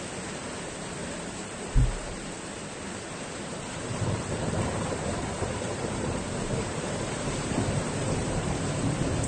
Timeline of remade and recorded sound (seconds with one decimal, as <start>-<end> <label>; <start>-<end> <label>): 0.0-1.0 recorded; 1.0-2.3 remade; 2.3-3.5 recorded; 3.5-8.6 remade; 8.6-9.3 recorded